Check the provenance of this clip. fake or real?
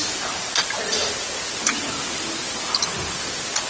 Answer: real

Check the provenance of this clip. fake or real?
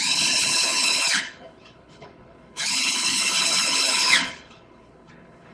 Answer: fake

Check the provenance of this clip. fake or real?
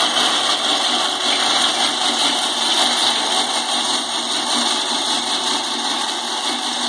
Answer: real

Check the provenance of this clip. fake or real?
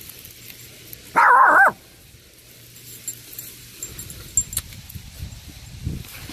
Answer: real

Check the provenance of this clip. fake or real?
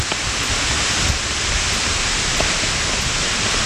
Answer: real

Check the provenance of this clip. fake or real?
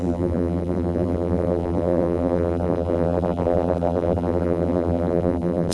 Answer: fake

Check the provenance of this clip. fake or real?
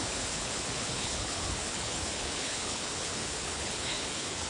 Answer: fake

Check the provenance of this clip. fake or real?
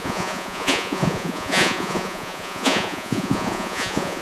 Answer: fake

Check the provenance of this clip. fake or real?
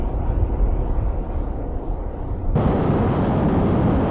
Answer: real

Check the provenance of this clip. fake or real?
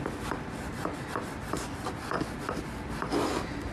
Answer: real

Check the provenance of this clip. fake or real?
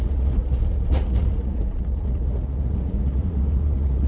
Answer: fake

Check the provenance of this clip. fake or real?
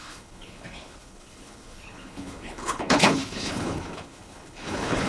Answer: fake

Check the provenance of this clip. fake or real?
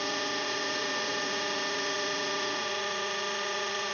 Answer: fake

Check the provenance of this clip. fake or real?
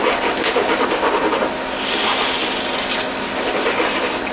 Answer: real